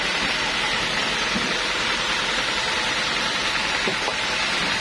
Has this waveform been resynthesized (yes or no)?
no